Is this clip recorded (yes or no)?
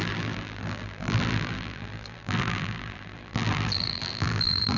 no